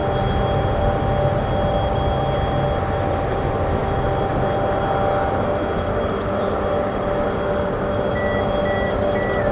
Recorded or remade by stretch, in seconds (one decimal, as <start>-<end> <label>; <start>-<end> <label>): 0.0-9.5 recorded